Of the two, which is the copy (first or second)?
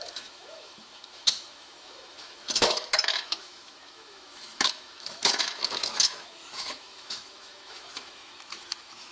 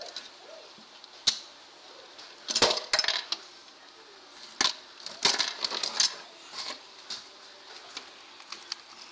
first